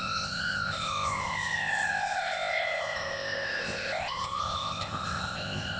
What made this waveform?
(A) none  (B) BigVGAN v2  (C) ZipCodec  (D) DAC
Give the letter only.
C